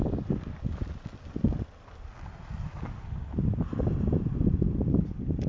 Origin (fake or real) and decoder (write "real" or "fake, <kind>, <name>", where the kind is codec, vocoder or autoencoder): real